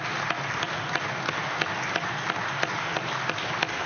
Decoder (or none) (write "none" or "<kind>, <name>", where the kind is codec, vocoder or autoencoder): none